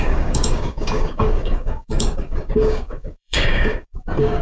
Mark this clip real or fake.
fake